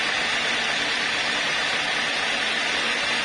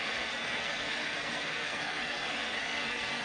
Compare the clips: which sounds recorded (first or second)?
first